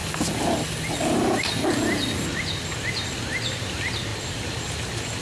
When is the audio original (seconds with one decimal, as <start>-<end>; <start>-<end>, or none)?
0.0-5.2